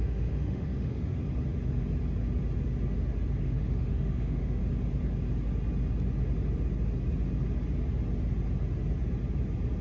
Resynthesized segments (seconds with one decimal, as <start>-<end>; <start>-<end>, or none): 0.0-1.2; 3.4-4.6